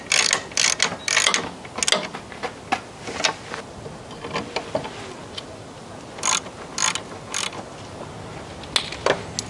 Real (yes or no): yes